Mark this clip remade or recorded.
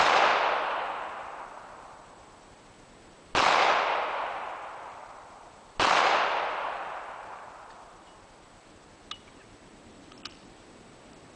recorded